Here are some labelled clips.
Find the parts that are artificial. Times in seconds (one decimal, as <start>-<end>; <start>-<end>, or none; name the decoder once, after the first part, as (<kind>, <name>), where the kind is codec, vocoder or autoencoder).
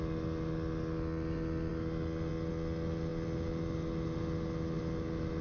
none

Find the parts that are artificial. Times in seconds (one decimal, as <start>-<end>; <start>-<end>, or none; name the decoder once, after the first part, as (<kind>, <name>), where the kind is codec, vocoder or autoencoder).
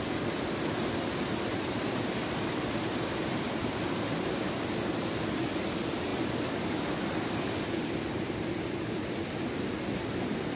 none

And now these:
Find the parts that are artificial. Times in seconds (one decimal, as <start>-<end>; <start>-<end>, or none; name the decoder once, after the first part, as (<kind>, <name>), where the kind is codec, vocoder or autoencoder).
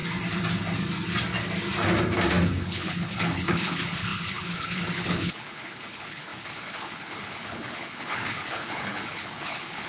2.5-9.9 (codec, HILCodec)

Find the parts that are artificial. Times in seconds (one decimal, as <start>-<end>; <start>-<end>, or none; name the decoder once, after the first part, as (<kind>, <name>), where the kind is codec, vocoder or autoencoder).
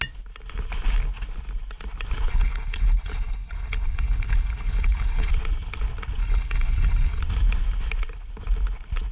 2.3-5.3 (codec, HILCodec); 6.2-7.2